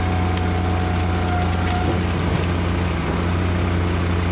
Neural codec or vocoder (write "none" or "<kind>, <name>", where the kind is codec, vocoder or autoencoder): none